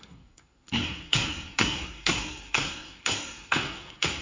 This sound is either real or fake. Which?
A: fake